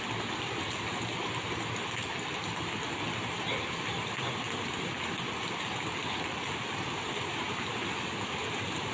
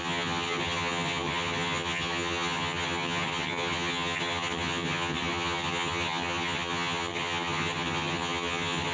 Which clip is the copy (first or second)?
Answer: second